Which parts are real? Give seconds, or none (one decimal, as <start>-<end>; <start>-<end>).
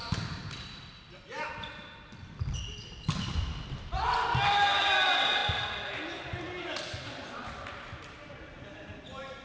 0.0-9.4